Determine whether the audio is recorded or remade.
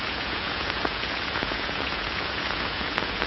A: remade